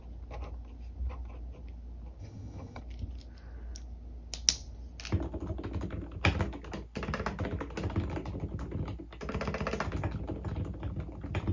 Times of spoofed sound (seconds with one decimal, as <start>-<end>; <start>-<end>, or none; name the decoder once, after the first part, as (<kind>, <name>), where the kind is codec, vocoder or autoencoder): 2.2-2.8 (vocoder, HiFi-GAN)